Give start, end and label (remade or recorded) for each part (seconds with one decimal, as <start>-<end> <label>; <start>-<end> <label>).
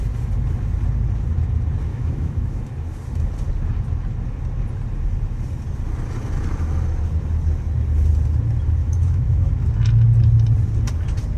0.0-1.9 recorded; 1.9-2.6 remade; 2.6-8.8 recorded; 8.8-9.5 remade; 9.5-11.4 recorded